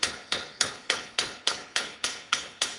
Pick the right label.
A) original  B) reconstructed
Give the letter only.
B